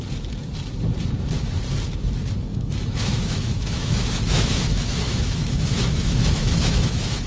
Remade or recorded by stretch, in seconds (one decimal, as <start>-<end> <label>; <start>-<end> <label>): 0.0-2.5 recorded; 2.5-7.3 remade